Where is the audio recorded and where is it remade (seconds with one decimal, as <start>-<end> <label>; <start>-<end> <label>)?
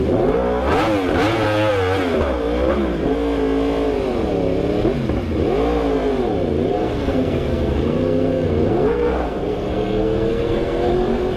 0.0-6.7 recorded; 6.7-10.9 remade; 10.9-11.4 recorded